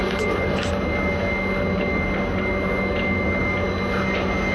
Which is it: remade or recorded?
recorded